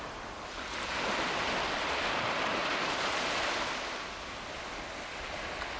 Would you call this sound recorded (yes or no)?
yes